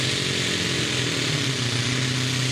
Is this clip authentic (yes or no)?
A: yes